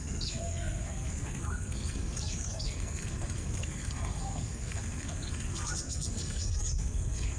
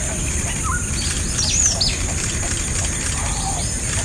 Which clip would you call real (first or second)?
second